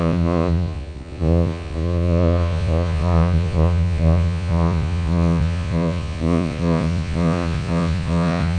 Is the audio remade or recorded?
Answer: remade